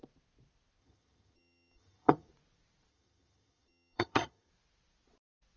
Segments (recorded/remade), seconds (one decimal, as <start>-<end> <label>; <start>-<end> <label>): 0.0-0.8 recorded; 0.8-2.3 remade; 2.3-2.9 recorded; 2.9-4.5 remade; 4.5-5.6 recorded